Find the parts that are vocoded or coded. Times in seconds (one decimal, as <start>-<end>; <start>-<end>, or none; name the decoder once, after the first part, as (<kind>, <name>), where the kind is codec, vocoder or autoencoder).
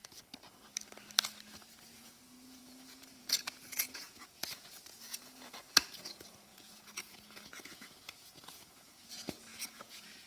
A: 1.9-10.3 (vocoder, Vocos)